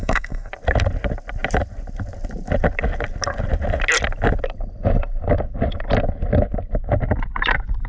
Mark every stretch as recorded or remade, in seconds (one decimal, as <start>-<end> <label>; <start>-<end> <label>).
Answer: 0.0-0.5 remade; 0.5-7.9 recorded